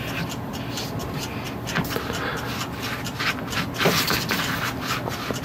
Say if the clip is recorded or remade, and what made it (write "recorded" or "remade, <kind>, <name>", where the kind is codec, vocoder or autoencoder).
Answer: recorded